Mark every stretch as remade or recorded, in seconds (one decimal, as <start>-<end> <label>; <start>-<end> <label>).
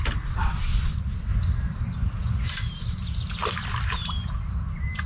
0.0-5.1 recorded